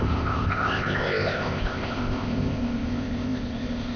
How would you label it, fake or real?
fake